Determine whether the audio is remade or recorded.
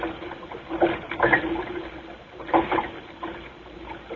remade